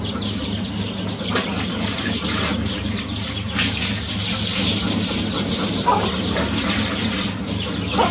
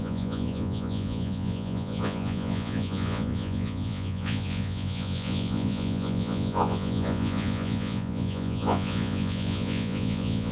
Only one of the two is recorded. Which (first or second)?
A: first